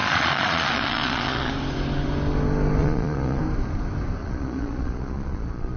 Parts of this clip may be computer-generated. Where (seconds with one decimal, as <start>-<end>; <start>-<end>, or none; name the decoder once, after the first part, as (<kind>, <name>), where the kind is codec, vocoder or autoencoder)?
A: 0.0-1.5 (vocoder, Vocos); 2.8-3.4; 4.2-5.8